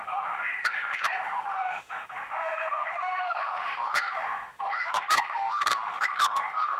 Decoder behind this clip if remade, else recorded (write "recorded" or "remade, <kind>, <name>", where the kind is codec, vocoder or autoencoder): remade, autoencoder, DAC-VAE